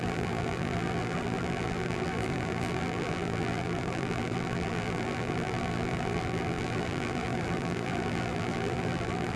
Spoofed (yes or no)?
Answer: yes